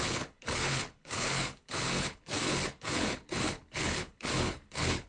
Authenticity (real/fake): fake